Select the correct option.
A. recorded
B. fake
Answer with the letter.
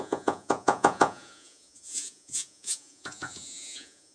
B